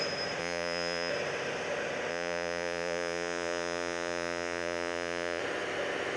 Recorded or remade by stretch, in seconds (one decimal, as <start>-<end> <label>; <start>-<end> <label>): 0.0-0.4 recorded; 0.4-1.1 remade; 1.1-2.1 recorded; 2.1-5.4 remade; 5.4-6.2 recorded